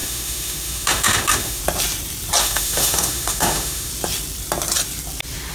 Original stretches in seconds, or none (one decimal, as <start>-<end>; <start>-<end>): 1.6-2.4; 3.9-5.5